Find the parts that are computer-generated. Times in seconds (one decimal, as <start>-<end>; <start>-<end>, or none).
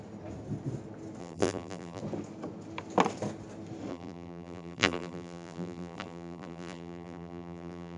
1.2-2.0; 3.9-8.0